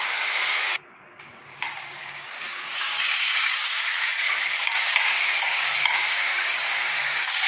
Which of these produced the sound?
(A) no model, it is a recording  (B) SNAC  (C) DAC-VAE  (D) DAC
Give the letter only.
D